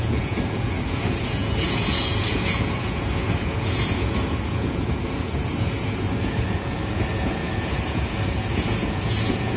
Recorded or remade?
remade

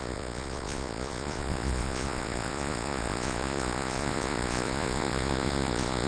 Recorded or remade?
remade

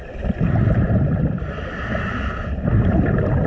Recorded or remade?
recorded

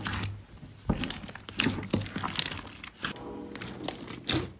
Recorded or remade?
recorded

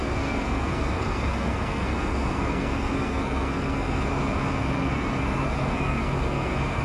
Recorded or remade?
remade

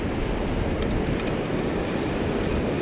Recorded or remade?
recorded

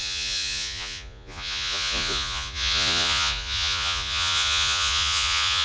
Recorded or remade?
remade